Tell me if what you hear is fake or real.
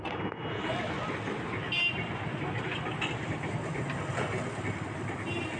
real